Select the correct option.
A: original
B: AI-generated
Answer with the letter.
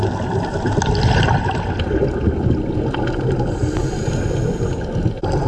A